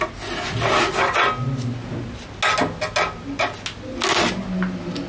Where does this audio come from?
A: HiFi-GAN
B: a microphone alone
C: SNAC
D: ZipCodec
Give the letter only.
B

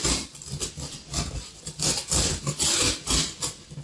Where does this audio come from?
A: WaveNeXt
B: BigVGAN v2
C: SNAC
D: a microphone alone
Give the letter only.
D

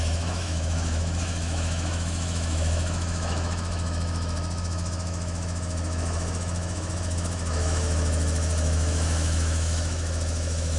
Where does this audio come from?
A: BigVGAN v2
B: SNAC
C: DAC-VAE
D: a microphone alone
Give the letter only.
C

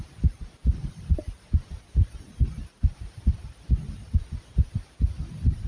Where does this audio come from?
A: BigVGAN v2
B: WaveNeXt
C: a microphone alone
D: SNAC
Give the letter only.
C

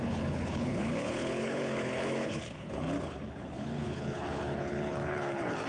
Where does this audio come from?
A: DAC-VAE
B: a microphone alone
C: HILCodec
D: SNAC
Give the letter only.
C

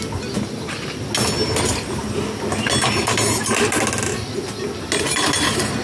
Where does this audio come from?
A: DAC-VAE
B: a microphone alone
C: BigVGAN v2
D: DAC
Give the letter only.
B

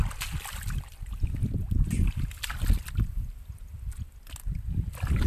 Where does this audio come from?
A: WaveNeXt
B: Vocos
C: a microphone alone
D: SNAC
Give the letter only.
C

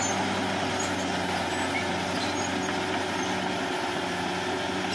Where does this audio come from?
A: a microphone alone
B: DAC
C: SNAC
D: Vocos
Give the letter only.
A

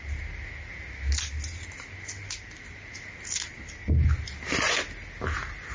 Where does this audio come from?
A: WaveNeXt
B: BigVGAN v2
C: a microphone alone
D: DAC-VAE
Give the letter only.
C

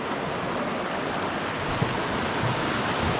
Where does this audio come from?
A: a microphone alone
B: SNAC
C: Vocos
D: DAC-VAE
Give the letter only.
A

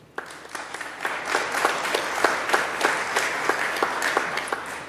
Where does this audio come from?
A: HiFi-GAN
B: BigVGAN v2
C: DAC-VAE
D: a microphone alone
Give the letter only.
D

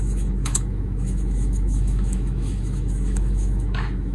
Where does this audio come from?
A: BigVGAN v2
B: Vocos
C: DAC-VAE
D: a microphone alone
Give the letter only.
C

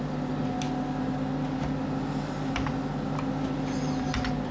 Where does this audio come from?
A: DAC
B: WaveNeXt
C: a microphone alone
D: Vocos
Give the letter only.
C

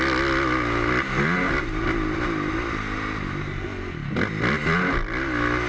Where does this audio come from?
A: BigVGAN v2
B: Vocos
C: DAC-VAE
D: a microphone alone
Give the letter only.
D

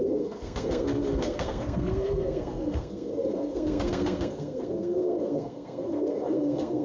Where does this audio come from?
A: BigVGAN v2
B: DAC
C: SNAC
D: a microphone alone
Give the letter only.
C